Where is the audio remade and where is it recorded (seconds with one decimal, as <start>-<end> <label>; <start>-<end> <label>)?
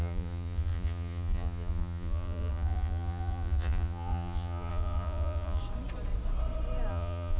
0.0-5.6 remade; 5.6-6.9 recorded; 6.9-7.4 remade